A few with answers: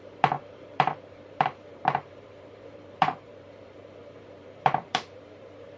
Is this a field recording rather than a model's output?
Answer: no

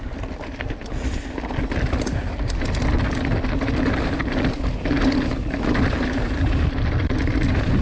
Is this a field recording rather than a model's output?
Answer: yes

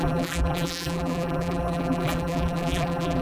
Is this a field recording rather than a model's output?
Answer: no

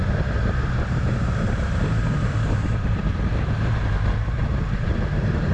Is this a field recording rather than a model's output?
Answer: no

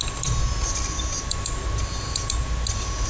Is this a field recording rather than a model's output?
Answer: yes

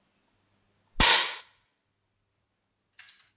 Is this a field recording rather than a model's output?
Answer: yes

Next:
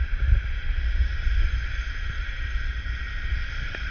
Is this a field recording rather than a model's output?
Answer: no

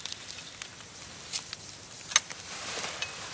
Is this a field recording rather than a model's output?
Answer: yes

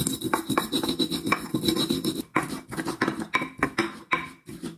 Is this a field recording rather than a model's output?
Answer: yes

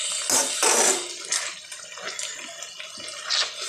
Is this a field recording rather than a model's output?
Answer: yes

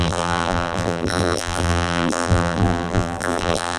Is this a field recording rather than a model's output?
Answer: no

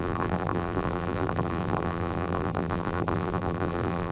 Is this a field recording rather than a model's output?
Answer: no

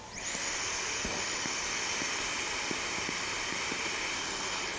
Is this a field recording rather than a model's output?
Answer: no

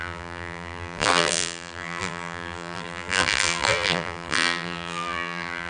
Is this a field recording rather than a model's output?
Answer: no